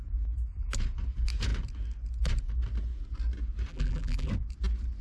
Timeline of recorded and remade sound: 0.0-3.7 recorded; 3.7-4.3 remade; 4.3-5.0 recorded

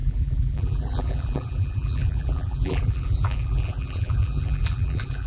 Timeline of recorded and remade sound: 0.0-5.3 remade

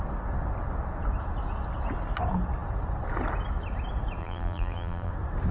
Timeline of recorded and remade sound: 0.0-4.2 recorded; 4.2-5.1 remade; 5.1-5.5 recorded